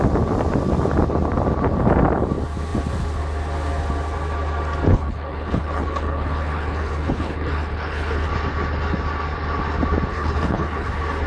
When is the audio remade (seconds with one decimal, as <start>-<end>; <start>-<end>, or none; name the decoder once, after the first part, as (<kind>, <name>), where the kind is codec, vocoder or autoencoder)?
4.9-8.3 (codec, HILCodec); 10.1-10.9